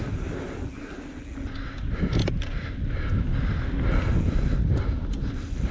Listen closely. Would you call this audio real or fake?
real